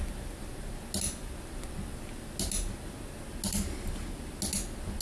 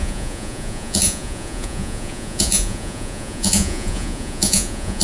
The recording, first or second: first